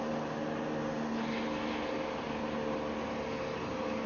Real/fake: real